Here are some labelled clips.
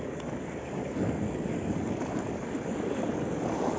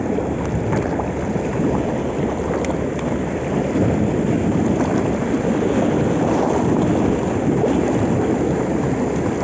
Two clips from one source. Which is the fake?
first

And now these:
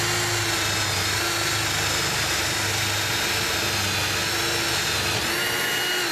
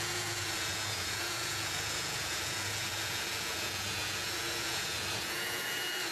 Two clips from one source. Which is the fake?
second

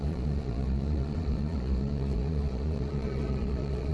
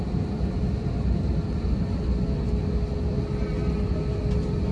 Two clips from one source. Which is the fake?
first